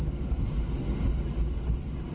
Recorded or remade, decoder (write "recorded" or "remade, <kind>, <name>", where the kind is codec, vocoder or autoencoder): recorded